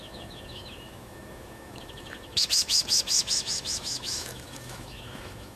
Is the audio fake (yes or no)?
yes